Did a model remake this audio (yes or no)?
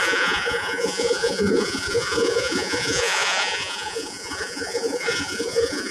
yes